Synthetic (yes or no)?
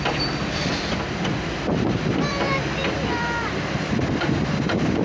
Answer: yes